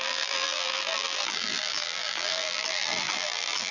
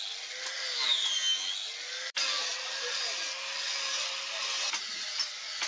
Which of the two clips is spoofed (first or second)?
first